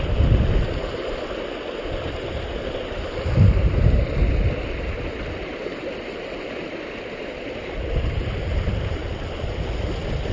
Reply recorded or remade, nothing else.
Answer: recorded